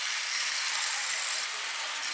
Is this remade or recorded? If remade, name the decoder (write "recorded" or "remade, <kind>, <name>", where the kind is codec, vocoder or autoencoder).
recorded